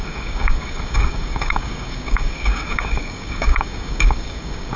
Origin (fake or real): fake